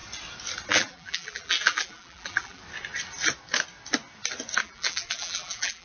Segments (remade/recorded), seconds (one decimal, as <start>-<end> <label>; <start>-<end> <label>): 0.0-0.7 recorded; 0.7-2.6 remade; 2.6-4.6 recorded; 4.6-5.8 remade